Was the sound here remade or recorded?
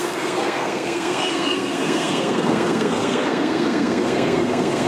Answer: remade